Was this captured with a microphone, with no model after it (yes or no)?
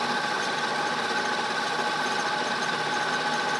yes